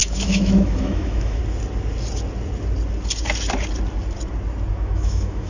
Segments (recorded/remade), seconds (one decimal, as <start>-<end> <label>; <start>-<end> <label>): 0.0-1.4 remade; 1.4-4.7 recorded; 4.7-5.5 remade